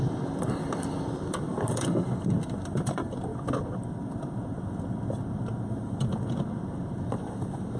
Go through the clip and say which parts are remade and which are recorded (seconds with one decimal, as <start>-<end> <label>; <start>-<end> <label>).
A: 0.0-7.8 recorded